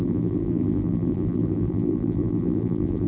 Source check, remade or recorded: remade